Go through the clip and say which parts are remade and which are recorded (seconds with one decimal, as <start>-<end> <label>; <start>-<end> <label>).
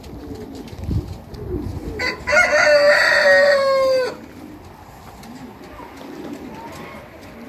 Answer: 0.0-7.5 recorded